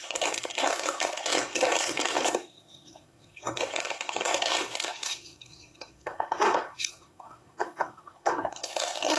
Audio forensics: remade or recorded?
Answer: remade